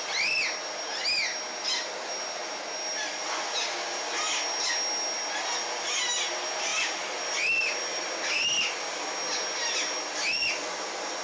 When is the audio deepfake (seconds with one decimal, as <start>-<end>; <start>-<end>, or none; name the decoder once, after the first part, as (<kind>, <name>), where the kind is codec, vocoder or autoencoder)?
none